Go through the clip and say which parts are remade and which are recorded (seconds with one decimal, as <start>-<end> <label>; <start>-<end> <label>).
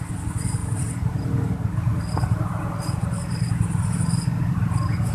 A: 0.0-0.6 recorded; 0.6-1.2 remade; 1.2-5.1 recorded